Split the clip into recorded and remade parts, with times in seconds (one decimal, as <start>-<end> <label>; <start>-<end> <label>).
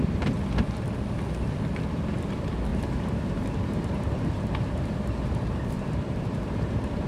0.0-2.7 recorded; 2.7-7.1 remade